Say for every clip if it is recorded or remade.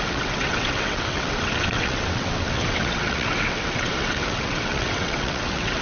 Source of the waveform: remade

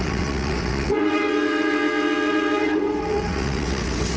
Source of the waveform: remade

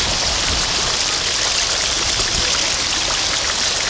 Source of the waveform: recorded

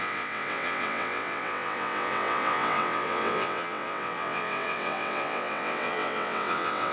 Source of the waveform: remade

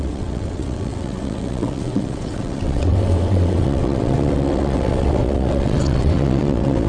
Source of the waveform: remade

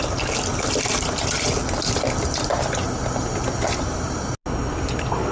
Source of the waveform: recorded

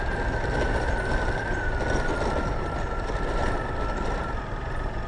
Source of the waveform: recorded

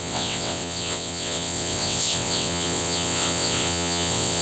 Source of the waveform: remade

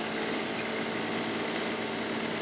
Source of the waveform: recorded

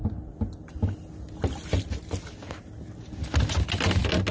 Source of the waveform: recorded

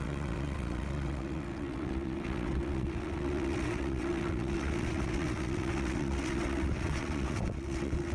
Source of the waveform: remade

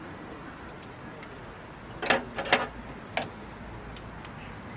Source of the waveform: recorded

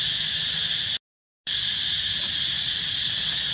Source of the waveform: recorded